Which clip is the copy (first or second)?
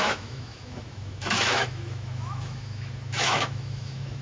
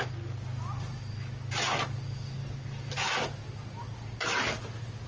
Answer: first